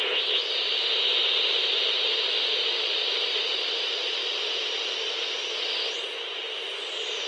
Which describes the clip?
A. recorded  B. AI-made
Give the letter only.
A